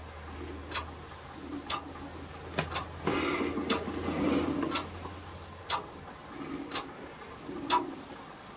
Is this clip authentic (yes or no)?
yes